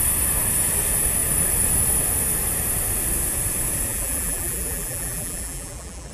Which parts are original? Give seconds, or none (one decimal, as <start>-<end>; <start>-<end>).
0.0-3.9